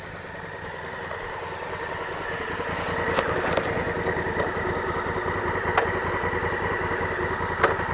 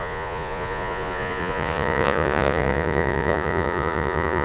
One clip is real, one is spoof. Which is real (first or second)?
first